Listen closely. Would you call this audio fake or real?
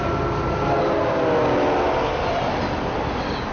real